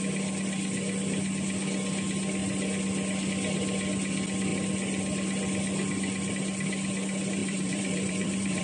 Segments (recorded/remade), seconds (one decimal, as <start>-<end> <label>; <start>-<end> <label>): 0.0-7.4 recorded; 7.4-8.6 remade